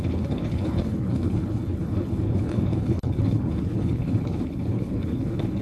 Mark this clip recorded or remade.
remade